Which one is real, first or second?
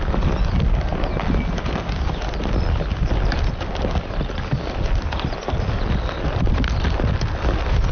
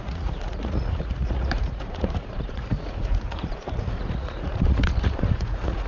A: first